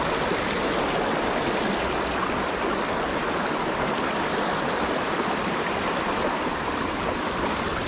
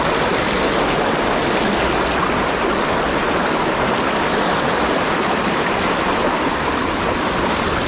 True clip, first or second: second